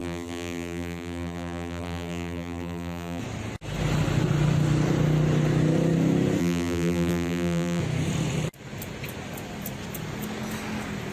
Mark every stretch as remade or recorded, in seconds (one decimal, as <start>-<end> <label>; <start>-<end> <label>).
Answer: 0.0-3.2 remade; 3.2-6.4 recorded; 6.4-7.8 remade; 7.8-11.1 recorded